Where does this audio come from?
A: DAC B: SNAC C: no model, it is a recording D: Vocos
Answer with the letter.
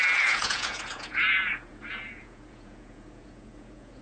D